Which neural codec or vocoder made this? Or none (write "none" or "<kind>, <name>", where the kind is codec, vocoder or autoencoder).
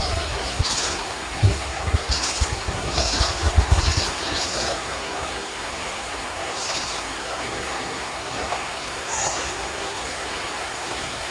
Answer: codec, SNAC